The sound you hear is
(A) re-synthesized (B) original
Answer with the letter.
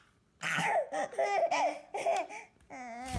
B